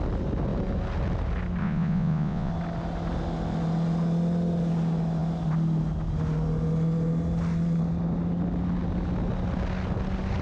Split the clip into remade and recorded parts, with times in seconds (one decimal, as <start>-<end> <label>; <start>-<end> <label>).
0.0-1.6 recorded; 1.6-2.5 remade; 2.5-10.4 recorded